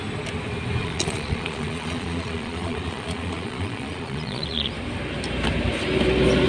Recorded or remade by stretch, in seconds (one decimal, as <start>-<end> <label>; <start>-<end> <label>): 0.0-0.8 recorded; 0.8-4.7 remade; 4.7-6.5 recorded